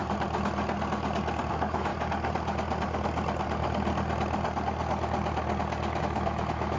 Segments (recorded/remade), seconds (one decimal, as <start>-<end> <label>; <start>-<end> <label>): 0.0-1.5 recorded; 1.5-1.9 remade; 1.9-6.0 recorded; 6.0-6.8 remade